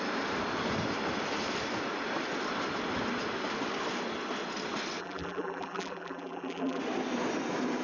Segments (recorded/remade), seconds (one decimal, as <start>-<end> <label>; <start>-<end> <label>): 0.0-5.0 recorded; 5.0-6.8 remade; 6.8-7.8 recorded